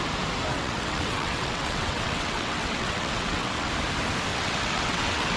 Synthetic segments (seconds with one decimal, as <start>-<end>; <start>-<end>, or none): 0.5-3.7; 4.3-5.4